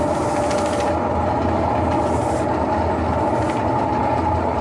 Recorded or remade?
recorded